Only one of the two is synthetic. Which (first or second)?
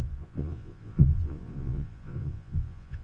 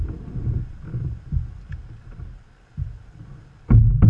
first